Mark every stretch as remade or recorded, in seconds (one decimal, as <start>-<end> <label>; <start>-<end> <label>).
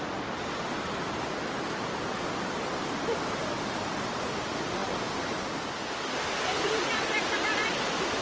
0.0-8.2 recorded